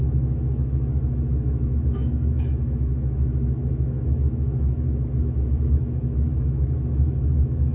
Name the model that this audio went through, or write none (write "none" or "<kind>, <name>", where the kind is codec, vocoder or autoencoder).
autoencoder, DAC-VAE